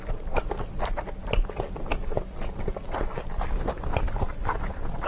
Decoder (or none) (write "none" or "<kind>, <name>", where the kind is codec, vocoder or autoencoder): none